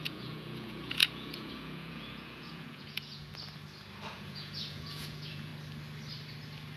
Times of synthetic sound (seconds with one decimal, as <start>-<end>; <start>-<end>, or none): 0.0-3.3; 4.1-5.5